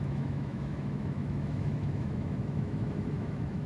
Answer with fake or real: fake